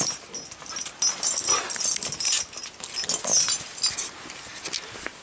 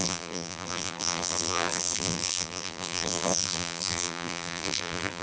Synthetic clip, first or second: second